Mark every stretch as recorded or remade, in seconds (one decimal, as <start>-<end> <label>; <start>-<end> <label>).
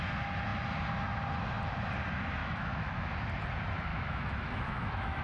0.0-2.4 recorded; 2.4-3.1 remade; 3.1-3.9 recorded; 3.9-5.2 remade